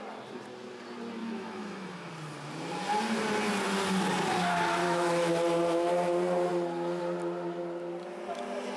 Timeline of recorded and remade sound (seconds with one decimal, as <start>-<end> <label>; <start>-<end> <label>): 0.0-1.2 recorded; 1.2-2.1 remade; 2.1-4.8 recorded; 4.8-5.3 remade; 5.3-8.8 recorded